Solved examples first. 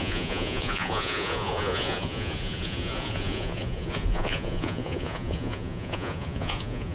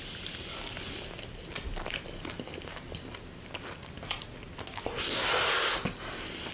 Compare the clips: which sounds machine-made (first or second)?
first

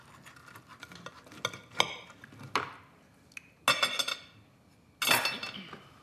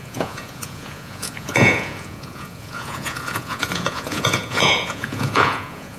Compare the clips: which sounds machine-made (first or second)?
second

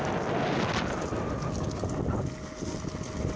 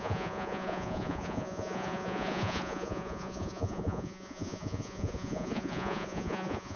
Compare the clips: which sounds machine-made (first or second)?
second